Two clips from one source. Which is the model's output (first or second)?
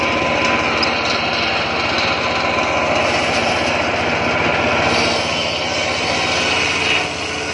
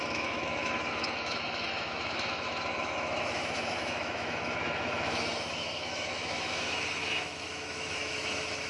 second